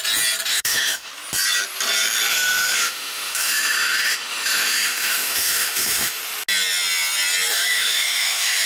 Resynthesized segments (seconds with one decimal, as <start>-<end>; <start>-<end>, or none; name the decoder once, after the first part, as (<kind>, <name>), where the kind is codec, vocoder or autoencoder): 0.5-1.1 (autoencoder, DAC-VAE); 2.3-6.2; 7.5-8.7

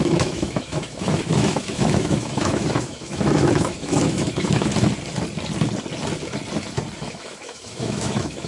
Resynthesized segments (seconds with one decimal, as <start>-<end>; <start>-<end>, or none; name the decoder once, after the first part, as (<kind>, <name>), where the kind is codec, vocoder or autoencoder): 0.0-4.7 (autoencoder, DAC-VAE); 7.0-8.5

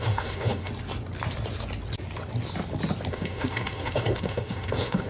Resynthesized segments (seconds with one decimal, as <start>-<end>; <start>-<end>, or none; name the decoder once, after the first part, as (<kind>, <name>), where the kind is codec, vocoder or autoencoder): 0.0-0.7 (autoencoder, DAC-VAE); 3.1-5.1